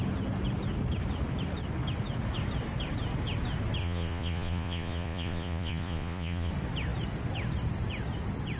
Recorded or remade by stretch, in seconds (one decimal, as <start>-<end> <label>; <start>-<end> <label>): 0.0-3.8 recorded; 3.8-6.5 remade; 6.5-8.6 recorded